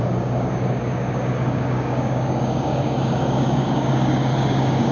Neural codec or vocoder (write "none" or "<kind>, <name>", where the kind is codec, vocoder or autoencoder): codec, DAC